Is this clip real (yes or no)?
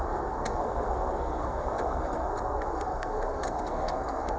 no